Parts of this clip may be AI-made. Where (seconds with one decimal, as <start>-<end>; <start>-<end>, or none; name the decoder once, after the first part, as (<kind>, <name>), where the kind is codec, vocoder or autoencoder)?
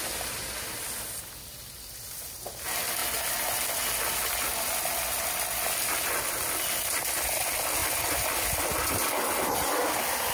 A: none